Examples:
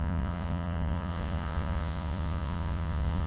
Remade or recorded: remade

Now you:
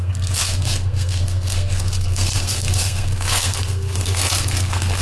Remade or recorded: remade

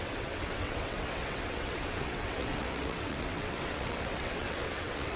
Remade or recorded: remade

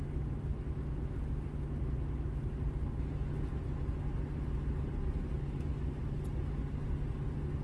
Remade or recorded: recorded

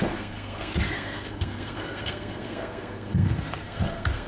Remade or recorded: remade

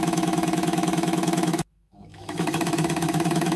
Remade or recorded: remade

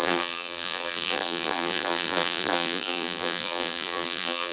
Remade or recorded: remade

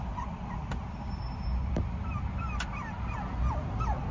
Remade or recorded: recorded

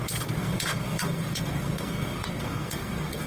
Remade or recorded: remade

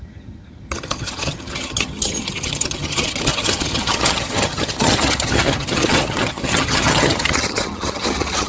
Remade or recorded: remade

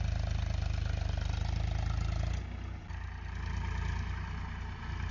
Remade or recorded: recorded